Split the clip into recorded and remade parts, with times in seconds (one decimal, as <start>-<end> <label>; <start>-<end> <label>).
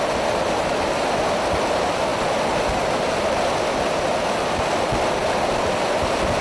0.0-6.4 recorded